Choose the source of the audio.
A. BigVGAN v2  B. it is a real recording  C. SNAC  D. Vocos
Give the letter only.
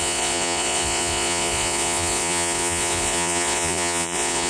D